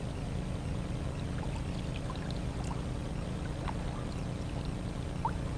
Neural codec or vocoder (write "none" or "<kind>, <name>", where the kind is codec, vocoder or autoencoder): none